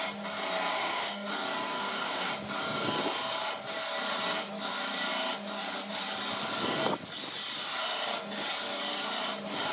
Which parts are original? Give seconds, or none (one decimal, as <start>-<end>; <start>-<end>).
0.0-0.7; 1.3-1.8; 2.3-9.7